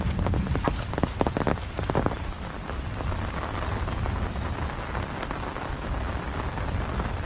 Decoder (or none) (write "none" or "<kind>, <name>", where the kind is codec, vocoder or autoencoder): none